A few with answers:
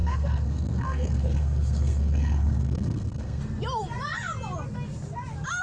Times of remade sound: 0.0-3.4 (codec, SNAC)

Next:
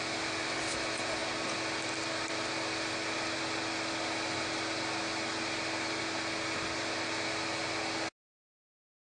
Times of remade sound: none

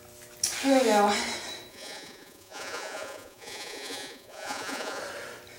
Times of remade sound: 1.7-5.0 (vocoder, Vocos)